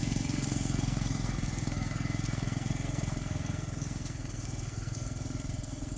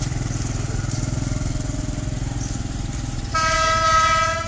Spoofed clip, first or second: first